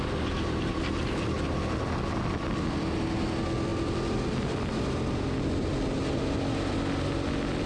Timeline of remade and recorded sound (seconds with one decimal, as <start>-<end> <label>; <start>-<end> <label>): 0.0-7.7 recorded